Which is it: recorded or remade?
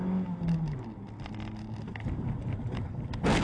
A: recorded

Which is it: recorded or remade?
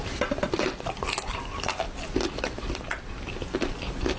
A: recorded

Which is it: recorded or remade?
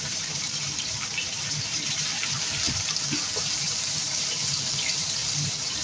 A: remade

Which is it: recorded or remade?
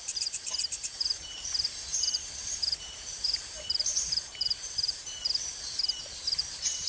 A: remade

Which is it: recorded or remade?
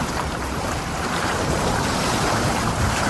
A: remade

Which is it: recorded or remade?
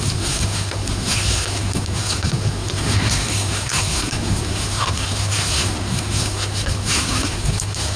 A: remade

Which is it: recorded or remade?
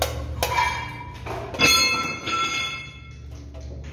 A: recorded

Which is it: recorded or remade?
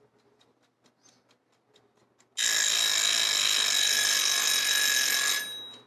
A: recorded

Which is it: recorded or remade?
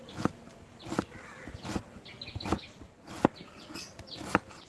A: recorded